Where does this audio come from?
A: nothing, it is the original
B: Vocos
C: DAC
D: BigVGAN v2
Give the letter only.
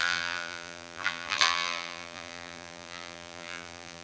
D